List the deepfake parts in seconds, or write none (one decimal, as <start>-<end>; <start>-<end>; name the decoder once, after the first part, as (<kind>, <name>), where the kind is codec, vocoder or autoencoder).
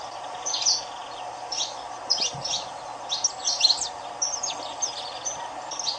none